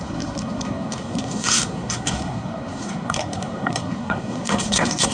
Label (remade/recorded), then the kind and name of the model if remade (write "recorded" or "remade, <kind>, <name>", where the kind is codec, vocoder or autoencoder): remade, codec, SNAC